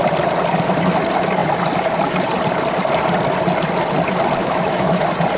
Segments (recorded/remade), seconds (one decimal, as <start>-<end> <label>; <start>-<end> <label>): 0.0-4.4 recorded; 4.4-5.0 remade; 5.0-5.4 recorded